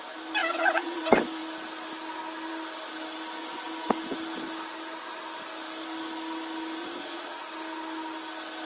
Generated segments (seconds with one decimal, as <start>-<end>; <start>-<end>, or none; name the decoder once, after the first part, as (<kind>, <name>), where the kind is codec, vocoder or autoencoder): 0.4-1.0 (vocoder, Vocos); 6.8-7.4